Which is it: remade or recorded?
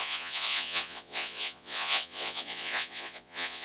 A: remade